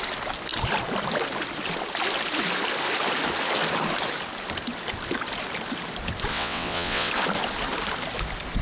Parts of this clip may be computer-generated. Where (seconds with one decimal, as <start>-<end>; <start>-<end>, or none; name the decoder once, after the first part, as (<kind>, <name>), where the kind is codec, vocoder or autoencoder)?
6.3-7.1 (vocoder, WaveNeXt)